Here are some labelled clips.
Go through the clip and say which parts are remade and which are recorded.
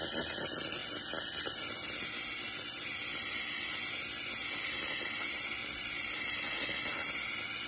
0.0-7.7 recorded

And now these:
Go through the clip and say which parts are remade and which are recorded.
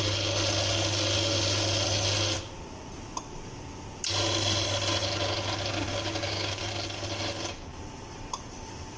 0.0-5.9 recorded; 5.9-6.7 remade; 6.7-9.0 recorded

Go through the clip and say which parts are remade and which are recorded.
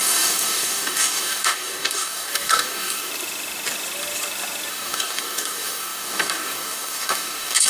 0.0-3.1 remade; 3.1-4.7 recorded; 4.7-7.7 remade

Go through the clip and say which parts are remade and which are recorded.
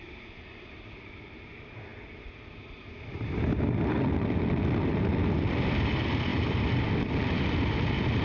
0.0-8.2 recorded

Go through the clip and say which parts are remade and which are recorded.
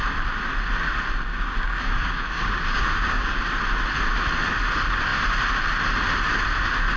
0.0-1.3 recorded; 1.3-3.4 remade; 3.4-7.0 recorded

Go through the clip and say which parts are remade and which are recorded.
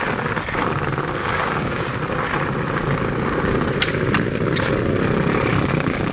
0.0-1.2 recorded; 1.2-1.9 remade; 1.9-5.5 recorded; 5.5-6.1 remade